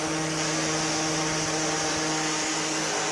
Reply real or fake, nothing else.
real